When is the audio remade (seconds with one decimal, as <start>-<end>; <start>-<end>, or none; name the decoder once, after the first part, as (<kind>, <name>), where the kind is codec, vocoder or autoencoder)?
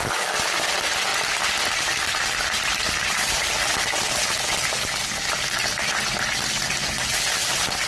none